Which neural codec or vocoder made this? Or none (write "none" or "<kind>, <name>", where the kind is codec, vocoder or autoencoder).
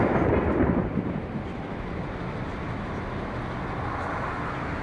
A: none